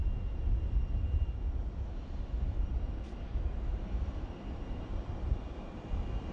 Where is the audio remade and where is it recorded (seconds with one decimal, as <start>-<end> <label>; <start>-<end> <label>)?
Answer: 0.0-3.3 recorded; 3.3-6.3 remade